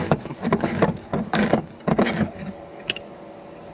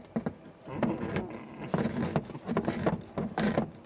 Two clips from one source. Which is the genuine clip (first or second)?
second